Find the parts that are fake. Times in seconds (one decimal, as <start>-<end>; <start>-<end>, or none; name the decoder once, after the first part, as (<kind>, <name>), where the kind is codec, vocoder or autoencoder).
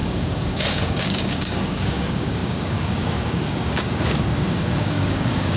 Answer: 0.0-5.6 (codec, DAC)